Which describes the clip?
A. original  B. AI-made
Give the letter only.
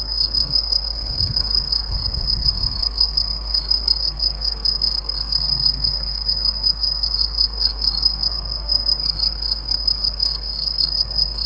B